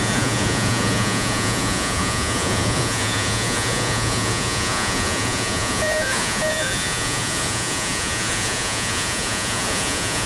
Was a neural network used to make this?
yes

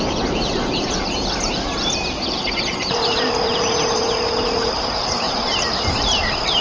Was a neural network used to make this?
yes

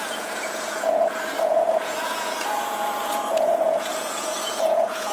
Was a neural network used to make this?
yes